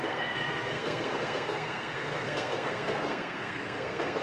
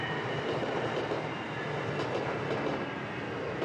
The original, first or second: second